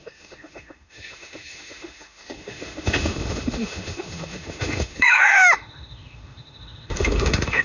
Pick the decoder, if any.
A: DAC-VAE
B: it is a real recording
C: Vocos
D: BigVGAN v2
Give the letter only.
A